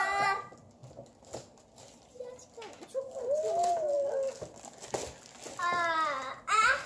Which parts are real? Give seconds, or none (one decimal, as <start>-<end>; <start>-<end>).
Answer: 0.0-0.8; 2.3-6.9